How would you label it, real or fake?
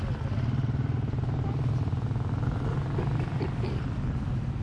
real